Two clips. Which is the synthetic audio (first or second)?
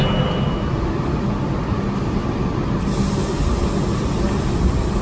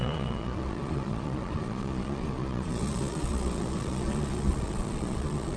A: second